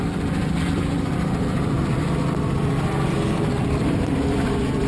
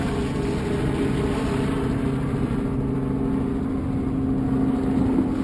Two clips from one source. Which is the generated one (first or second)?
first